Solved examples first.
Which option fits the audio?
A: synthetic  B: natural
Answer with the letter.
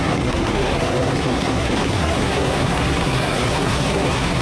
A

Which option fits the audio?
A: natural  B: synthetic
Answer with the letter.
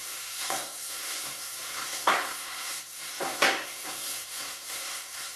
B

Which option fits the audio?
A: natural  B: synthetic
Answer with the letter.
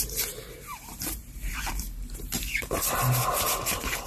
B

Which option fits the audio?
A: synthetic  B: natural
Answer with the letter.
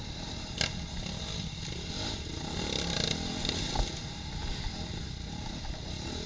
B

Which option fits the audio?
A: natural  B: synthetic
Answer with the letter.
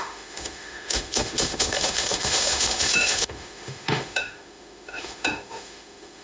B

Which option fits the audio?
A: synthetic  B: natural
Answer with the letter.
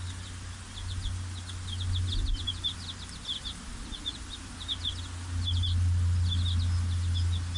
B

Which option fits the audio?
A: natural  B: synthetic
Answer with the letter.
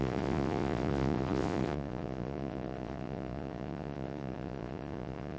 B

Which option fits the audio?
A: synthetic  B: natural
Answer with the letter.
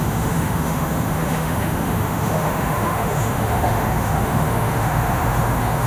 A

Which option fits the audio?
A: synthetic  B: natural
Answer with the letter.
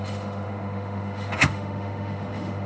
A